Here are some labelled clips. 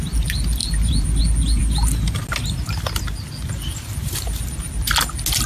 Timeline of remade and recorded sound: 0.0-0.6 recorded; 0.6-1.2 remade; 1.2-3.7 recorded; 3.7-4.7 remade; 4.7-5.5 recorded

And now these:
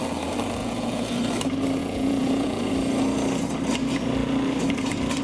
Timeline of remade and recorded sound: 0.0-0.6 recorded; 0.6-1.2 remade; 1.2-1.8 recorded; 1.8-2.7 remade; 2.7-5.2 recorded

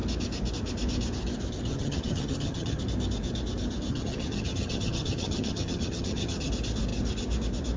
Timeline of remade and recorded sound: 0.0-1.7 recorded; 1.7-2.8 remade; 2.8-3.9 recorded; 3.9-6.5 remade; 6.5-7.8 recorded

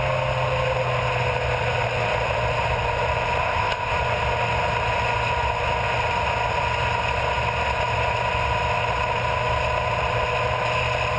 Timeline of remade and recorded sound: 0.0-3.4 recorded; 3.4-3.9 remade; 3.9-11.2 recorded

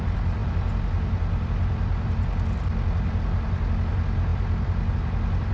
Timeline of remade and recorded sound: 0.0-5.5 recorded